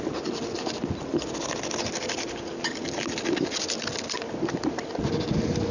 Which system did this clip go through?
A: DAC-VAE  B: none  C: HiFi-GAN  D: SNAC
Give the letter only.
B